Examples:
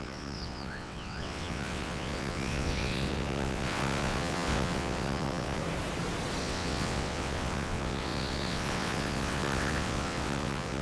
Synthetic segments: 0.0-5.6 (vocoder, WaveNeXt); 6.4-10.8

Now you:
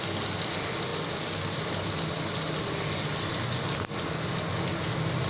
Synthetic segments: none

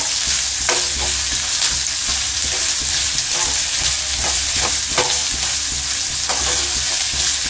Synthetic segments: 2.0-3.5 (vocoder, BigVGAN v2); 4.1-4.7